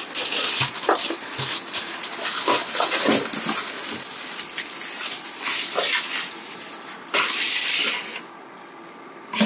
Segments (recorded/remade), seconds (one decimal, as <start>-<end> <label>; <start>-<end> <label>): 0.0-9.5 recorded